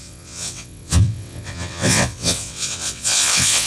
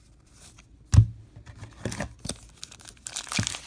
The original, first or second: second